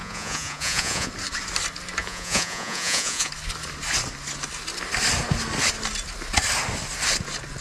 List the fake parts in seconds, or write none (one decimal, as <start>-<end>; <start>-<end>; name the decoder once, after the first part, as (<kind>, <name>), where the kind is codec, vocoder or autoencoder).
0.0-1.1 (vocoder, Vocos); 2.0-3.3